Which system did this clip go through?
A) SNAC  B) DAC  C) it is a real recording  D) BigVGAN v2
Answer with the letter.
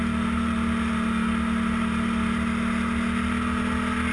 C